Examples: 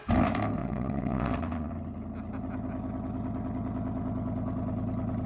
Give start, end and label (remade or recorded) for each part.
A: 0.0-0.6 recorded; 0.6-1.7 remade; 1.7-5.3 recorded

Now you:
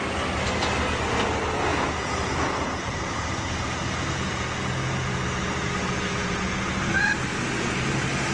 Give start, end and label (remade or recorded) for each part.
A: 0.0-1.7 recorded; 1.7-6.4 remade; 6.4-7.3 recorded; 7.3-7.9 remade; 7.9-8.3 recorded

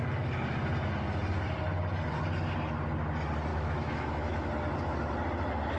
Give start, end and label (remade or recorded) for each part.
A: 0.0-3.5 recorded; 3.5-4.5 remade; 4.5-5.8 recorded

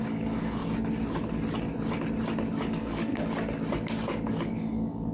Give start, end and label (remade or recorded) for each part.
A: 0.0-0.6 remade; 0.6-2.6 recorded; 2.6-3.1 remade; 3.1-4.3 recorded; 4.3-5.1 remade

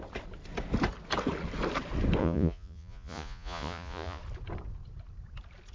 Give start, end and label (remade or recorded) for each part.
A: 0.0-2.2 recorded; 2.2-4.2 remade; 4.2-5.7 recorded

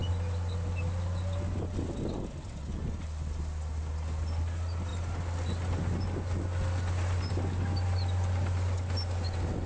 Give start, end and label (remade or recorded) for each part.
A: 0.0-9.7 recorded